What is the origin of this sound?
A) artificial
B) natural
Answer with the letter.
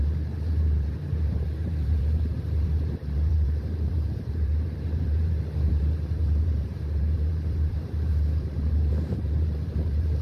A